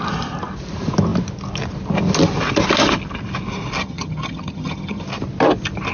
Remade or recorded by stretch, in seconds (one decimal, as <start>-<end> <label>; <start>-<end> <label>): 0.0-3.8 recorded; 3.8-5.0 remade; 5.0-5.9 recorded